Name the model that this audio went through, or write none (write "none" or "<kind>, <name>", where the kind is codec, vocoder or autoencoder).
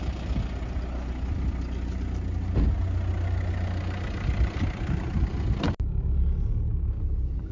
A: none